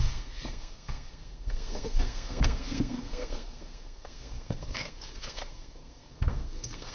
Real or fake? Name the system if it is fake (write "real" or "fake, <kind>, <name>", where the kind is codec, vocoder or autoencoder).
fake, codec, SNAC